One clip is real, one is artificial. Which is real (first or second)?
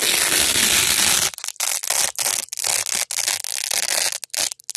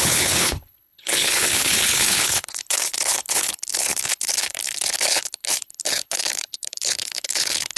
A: first